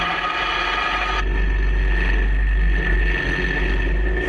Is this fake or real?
real